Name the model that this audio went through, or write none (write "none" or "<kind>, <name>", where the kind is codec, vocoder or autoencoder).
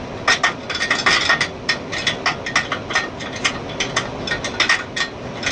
none